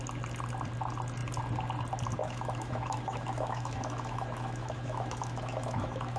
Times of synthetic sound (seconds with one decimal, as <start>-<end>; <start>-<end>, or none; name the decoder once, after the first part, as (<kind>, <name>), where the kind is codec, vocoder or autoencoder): 2.2-6.2 (autoencoder, DAC-VAE)